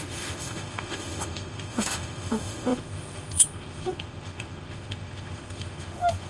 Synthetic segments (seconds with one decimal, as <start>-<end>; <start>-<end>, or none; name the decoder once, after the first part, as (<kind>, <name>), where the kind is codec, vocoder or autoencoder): 0.0-6.3 (autoencoder, DAC-VAE)